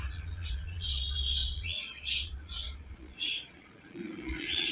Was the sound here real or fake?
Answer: fake